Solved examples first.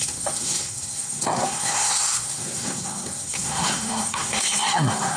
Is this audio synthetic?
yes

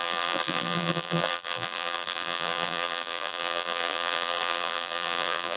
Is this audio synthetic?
yes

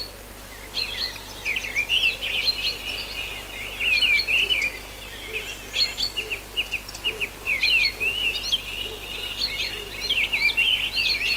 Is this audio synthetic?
no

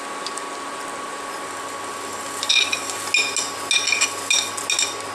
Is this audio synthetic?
no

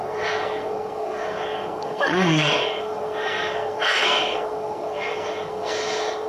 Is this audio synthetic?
yes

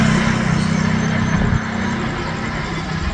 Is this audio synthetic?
no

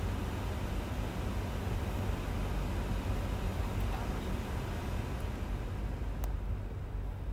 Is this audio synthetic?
no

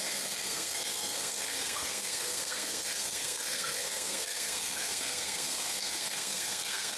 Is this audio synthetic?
yes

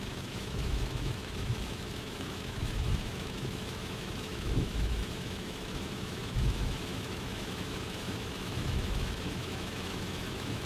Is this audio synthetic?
yes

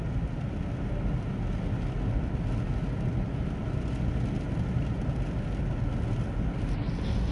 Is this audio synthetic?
no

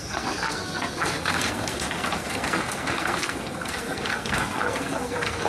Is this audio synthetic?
yes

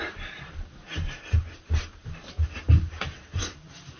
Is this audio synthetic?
yes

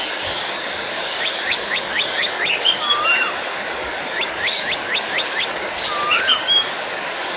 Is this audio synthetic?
yes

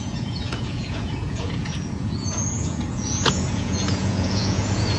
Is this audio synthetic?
yes